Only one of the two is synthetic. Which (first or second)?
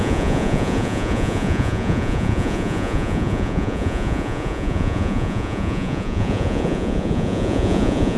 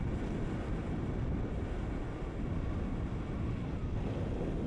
first